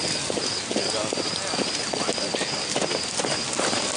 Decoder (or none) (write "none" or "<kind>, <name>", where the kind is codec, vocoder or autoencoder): none